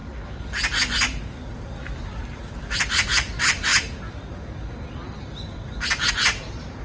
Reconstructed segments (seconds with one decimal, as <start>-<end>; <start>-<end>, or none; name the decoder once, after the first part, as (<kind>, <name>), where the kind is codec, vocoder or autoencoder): 1.5-3.7 (vocoder, BigVGAN v2); 6.1-6.8